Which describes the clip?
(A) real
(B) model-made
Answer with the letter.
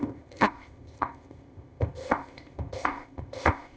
B